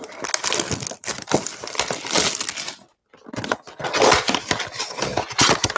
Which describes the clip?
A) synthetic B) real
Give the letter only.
B